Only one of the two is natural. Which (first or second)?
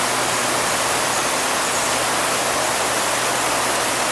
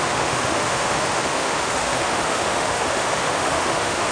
first